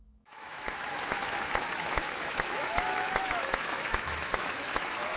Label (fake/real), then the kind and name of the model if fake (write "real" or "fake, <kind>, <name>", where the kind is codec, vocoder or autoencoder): fake, autoencoder, DAC-VAE